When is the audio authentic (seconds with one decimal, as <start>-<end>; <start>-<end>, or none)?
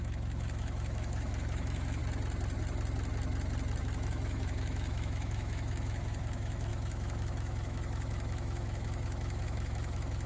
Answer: 2.0-3.8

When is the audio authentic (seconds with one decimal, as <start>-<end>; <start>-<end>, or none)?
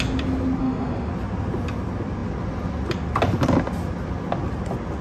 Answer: 0.0-0.6; 1.1-5.0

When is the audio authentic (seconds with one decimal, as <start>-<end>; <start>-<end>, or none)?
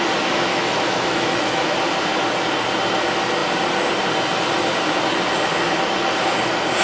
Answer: 0.0-0.5; 1.7-6.8